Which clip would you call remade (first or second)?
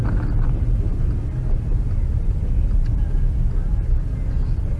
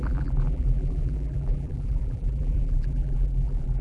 second